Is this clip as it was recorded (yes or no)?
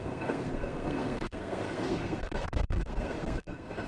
no